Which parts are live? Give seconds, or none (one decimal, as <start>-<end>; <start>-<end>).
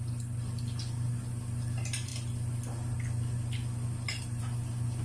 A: 0.0-5.0